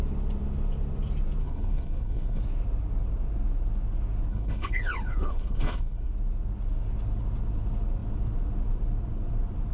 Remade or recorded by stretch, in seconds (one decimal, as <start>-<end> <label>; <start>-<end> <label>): 0.0-1.4 recorded; 1.4-2.4 remade; 2.4-4.3 recorded; 4.3-6.1 remade; 6.1-9.7 recorded